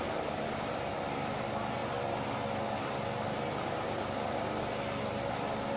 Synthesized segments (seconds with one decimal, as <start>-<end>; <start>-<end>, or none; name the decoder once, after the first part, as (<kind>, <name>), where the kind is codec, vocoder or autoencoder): none